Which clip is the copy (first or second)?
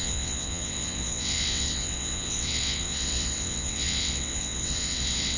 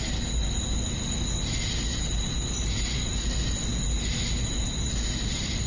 first